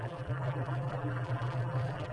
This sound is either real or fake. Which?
fake